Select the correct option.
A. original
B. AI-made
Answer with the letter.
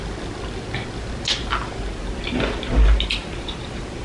A